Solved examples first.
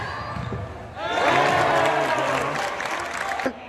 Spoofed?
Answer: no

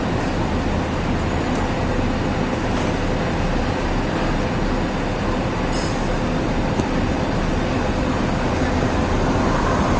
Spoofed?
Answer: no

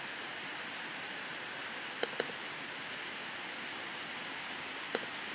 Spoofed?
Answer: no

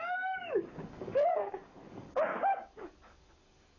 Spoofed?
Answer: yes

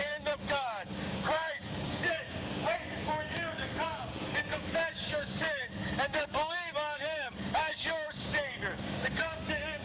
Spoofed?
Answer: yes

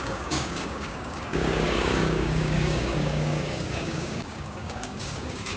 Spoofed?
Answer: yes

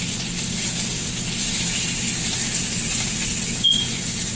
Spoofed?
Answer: no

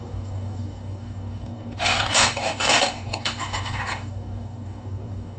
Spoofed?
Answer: yes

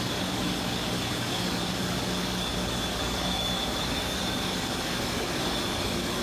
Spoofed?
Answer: yes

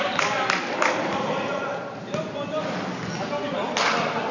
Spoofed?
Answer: no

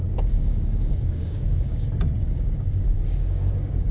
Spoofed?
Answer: yes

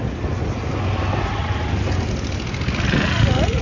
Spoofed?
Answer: no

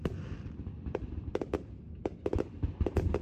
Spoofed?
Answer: no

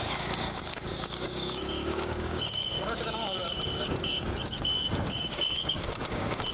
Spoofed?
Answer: yes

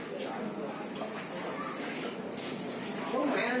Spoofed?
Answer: no